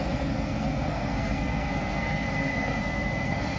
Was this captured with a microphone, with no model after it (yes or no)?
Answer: no